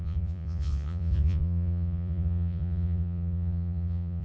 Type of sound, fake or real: fake